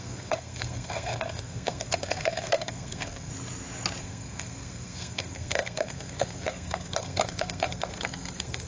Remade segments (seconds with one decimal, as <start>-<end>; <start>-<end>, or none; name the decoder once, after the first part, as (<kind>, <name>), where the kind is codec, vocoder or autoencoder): 0.0-3.3 (codec, SNAC); 4.0-8.7